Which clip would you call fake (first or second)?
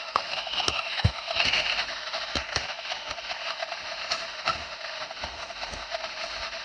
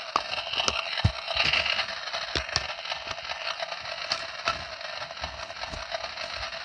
first